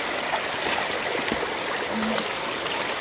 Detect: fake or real real